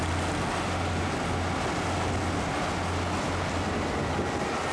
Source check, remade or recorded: recorded